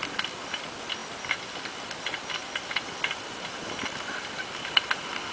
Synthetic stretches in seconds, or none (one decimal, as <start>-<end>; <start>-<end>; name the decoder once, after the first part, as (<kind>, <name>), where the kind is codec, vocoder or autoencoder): none